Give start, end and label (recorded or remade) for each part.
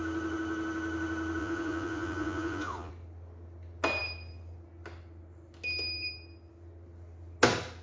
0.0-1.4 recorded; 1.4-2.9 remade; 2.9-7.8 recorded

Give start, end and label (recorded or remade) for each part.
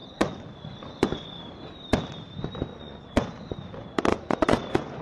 0.0-1.4 remade; 1.4-2.7 recorded; 2.7-3.5 remade; 3.5-4.1 recorded; 4.1-5.0 remade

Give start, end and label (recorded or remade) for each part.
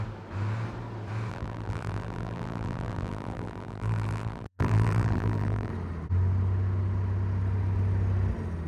0.0-1.3 recorded; 1.3-5.7 remade; 5.7-8.7 recorded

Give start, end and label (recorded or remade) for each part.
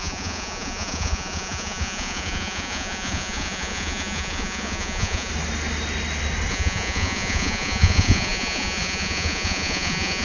0.0-5.3 remade; 5.3-6.5 recorded; 6.5-10.2 remade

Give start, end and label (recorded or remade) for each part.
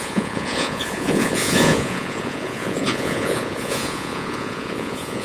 0.0-5.2 remade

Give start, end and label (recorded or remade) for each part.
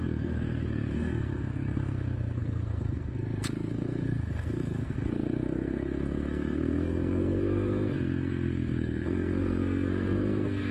0.0-10.7 remade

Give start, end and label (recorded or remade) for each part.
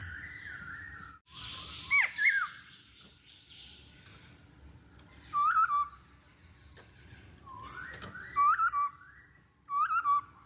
0.0-4.0 remade; 4.0-10.5 recorded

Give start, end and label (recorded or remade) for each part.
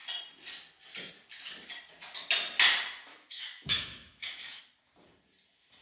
0.0-3.1 recorded; 3.1-4.6 remade; 4.6-5.8 recorded